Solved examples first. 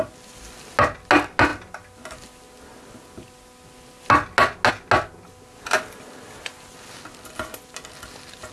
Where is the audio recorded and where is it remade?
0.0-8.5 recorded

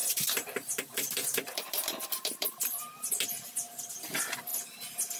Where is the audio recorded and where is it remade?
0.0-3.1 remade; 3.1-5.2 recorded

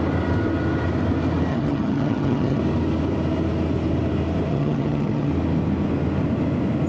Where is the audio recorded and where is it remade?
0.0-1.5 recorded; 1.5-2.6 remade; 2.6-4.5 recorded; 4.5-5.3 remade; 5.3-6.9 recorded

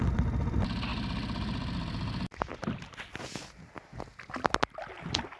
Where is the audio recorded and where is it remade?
0.0-5.4 recorded

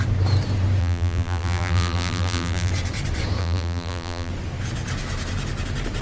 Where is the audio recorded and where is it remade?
0.0-0.8 recorded; 0.8-2.7 remade; 2.7-3.4 recorded; 3.4-4.3 remade; 4.3-6.0 recorded